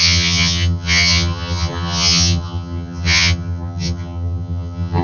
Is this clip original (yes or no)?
no